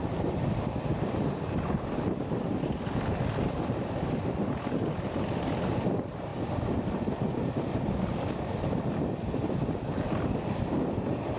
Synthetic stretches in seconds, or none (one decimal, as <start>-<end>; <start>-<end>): none